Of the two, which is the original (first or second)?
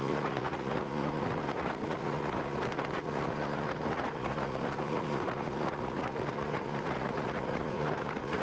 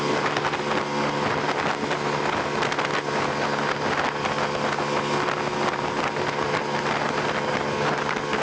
second